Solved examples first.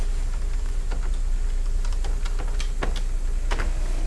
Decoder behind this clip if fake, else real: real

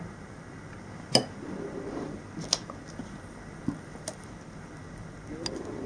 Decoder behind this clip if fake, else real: real